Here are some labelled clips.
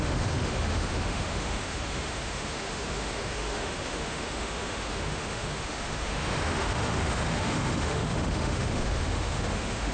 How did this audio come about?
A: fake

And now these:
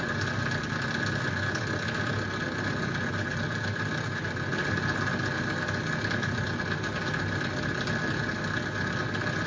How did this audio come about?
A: real